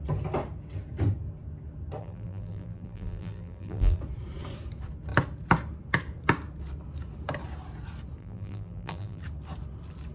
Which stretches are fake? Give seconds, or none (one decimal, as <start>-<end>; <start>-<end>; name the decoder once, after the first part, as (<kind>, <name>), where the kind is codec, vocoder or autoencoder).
2.0-4.0 (vocoder, BigVGAN v2); 8.2-9.2